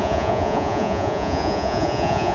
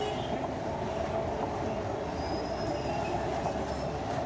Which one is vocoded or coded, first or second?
first